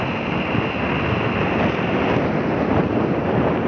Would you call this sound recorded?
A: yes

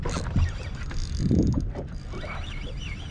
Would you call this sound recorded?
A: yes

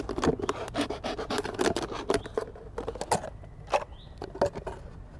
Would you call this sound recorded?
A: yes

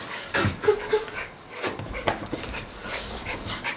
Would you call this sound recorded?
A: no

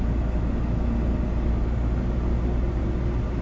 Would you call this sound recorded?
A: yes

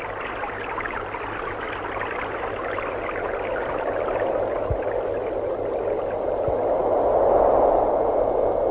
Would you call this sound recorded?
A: yes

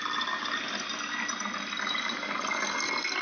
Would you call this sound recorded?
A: yes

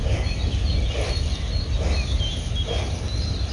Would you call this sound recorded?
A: yes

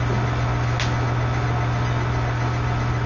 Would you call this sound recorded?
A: yes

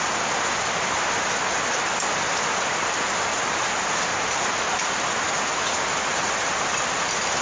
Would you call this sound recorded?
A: yes